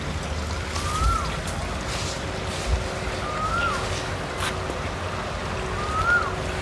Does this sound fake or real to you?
real